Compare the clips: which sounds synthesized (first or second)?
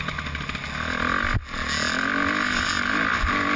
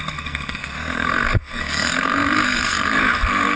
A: second